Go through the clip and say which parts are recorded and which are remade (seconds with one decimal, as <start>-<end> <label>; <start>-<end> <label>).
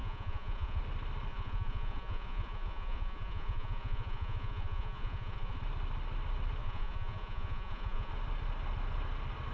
0.0-0.8 remade; 0.8-1.3 recorded; 1.3-5.6 remade; 5.6-6.6 recorded; 6.6-8.1 remade; 8.1-9.5 recorded